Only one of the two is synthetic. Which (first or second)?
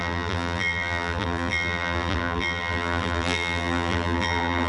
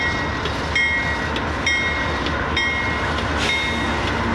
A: first